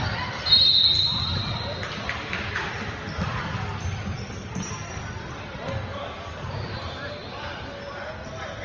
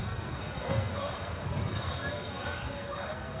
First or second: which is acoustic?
first